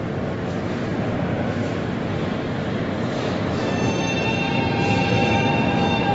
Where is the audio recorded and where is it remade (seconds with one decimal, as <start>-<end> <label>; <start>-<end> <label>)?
0.0-5.2 recorded; 5.2-6.1 remade